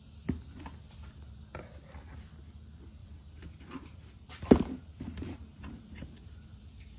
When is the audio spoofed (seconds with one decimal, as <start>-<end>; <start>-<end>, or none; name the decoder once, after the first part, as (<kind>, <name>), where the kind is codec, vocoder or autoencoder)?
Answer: 3.0-6.6 (vocoder, BigVGAN v2)